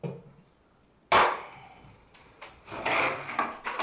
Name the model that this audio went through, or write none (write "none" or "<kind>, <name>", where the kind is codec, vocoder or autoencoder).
none